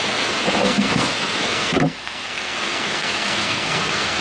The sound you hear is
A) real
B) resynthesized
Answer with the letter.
B